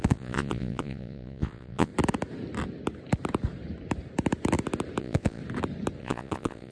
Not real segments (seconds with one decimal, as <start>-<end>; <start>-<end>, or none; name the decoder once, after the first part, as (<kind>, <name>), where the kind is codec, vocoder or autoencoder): 0.0-1.9 (vocoder, Vocos); 5.0-5.4; 6.0-6.7